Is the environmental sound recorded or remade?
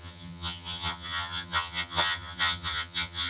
remade